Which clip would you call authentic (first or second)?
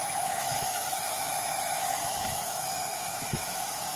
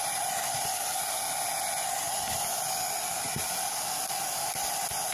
second